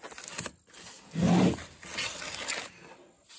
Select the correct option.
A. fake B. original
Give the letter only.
B